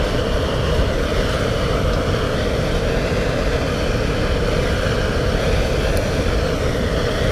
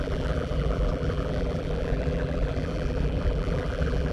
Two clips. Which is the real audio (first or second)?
first